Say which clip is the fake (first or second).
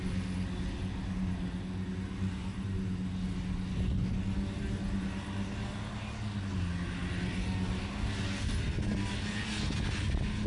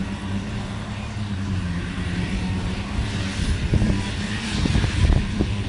second